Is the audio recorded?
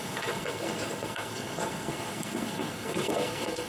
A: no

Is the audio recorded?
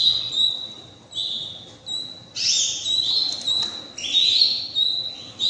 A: yes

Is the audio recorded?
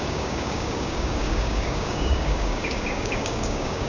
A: no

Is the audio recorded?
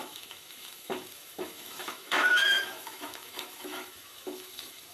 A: no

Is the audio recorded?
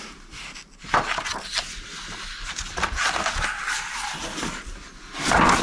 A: yes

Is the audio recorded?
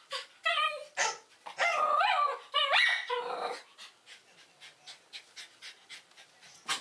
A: yes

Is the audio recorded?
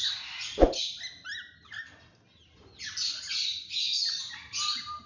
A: yes